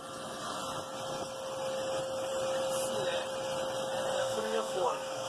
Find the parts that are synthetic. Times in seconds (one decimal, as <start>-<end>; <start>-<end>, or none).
4.2-5.3